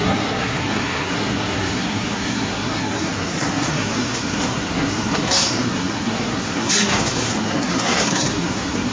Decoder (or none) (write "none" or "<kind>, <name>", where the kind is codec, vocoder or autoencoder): codec, SNAC